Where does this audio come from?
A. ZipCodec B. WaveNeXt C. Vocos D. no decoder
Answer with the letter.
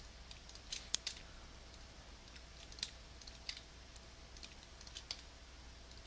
D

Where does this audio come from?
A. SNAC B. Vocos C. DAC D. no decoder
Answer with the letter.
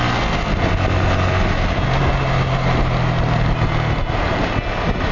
D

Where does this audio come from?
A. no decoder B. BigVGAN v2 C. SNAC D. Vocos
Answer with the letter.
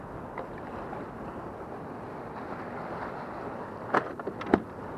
A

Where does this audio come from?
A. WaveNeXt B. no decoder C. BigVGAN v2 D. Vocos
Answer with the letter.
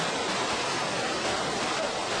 B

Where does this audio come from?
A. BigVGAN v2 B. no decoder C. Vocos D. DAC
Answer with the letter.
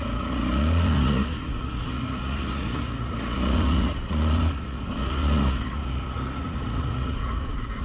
C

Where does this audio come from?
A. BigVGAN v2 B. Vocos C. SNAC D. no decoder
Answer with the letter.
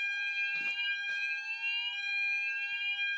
D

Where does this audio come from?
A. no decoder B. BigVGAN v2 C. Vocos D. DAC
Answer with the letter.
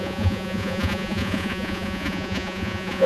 C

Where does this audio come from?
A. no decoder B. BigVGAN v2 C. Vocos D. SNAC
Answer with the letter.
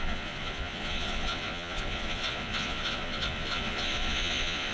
C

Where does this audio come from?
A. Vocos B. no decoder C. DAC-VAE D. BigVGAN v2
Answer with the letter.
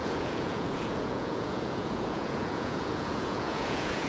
A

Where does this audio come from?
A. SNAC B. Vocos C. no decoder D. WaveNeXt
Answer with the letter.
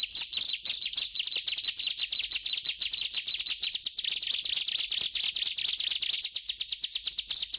C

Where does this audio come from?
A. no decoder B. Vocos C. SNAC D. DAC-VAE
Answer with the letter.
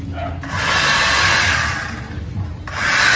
A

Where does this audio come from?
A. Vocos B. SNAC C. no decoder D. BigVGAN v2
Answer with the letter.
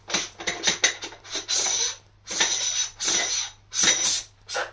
C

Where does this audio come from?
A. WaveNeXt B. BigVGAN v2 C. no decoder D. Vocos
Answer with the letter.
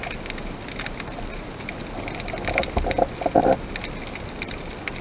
C